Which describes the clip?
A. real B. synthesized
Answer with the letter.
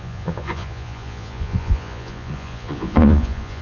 B